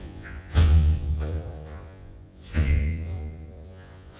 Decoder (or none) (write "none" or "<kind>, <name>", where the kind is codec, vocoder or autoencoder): vocoder, Vocos